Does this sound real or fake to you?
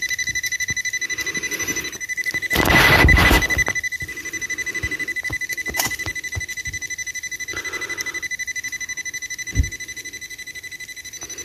real